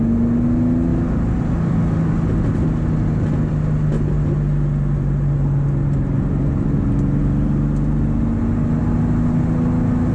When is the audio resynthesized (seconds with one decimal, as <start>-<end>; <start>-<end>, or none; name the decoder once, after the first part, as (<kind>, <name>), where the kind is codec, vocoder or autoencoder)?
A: none